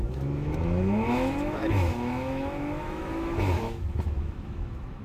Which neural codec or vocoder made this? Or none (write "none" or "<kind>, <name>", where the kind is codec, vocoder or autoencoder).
autoencoder, DAC-VAE